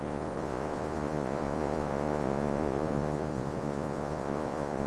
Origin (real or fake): fake